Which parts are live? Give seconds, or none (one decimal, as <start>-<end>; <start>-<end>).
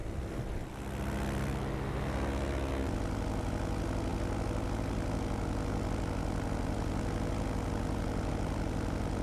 0.0-9.2